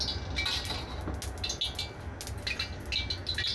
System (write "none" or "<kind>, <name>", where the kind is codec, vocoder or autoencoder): none